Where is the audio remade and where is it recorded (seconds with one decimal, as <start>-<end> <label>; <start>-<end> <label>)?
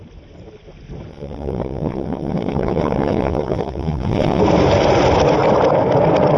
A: 0.0-1.1 recorded; 1.1-4.4 remade; 4.4-6.4 recorded